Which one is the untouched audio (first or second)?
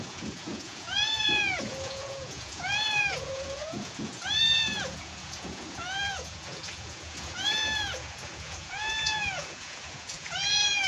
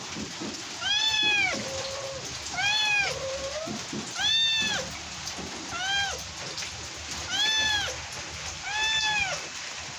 second